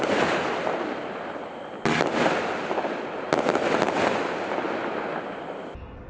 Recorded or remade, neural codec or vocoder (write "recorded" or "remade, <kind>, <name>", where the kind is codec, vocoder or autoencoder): recorded